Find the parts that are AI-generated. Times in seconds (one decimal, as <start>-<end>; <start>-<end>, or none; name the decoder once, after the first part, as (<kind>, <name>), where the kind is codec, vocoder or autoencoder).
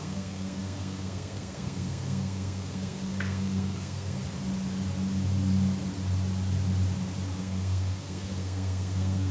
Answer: 0.0-4.2 (codec, SNAC); 7.4-9.3